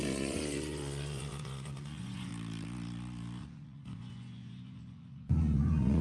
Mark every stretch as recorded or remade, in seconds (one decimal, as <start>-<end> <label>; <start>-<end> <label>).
0.0-2.3 remade; 2.3-3.4 recorded; 3.4-6.0 remade